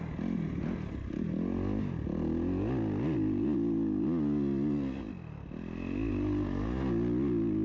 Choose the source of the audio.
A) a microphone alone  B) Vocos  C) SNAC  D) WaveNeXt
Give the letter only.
A